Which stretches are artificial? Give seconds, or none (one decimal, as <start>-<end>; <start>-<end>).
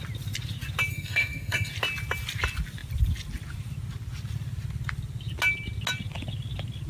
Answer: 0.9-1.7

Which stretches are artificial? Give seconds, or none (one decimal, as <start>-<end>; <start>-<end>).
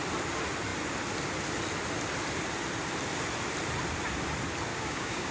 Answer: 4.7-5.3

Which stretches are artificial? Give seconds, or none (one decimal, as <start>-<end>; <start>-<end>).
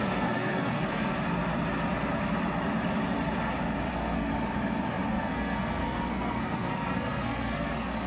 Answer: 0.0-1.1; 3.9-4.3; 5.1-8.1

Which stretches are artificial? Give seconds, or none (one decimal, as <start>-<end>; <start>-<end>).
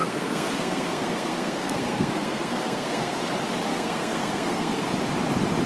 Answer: 0.0-3.2; 3.7-4.9